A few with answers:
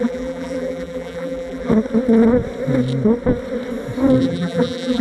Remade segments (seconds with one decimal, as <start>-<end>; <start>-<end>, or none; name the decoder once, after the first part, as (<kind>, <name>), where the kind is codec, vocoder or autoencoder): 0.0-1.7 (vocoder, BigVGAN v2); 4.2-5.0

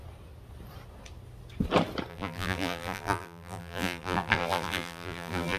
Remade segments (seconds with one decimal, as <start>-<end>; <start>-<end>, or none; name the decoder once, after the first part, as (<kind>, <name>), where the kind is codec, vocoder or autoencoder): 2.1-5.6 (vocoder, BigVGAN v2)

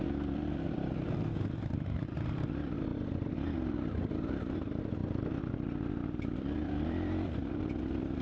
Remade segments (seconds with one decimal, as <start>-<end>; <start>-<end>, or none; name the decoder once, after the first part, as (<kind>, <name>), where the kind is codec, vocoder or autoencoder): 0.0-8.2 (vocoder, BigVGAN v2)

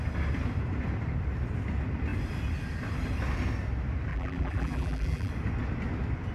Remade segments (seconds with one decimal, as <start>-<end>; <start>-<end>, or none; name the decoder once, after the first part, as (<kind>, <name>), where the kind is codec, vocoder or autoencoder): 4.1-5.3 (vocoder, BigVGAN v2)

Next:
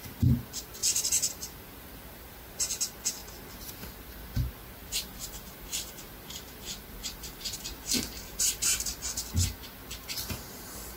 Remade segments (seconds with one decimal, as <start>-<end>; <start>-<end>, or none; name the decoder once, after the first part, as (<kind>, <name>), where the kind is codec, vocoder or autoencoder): 0.8-2.7 (vocoder, BigVGAN v2); 3.2-3.7; 4.8-9.1